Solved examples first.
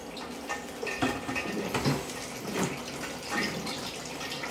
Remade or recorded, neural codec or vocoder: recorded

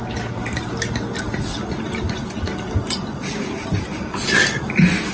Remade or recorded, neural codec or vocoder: recorded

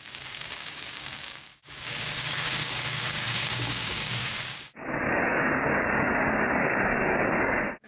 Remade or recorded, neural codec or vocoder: remade, codec, DAC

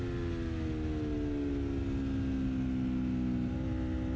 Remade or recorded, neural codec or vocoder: recorded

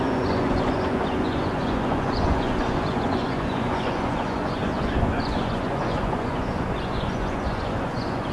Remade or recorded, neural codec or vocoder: remade, vocoder, Vocos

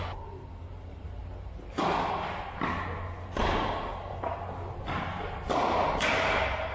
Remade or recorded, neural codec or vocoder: recorded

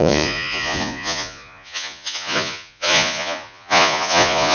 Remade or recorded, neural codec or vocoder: remade, vocoder, Vocos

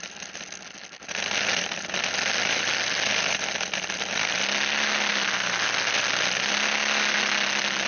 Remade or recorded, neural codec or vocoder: recorded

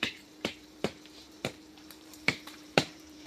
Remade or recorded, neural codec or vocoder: remade, vocoder, BigVGAN v2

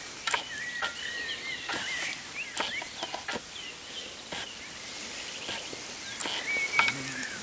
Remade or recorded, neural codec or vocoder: recorded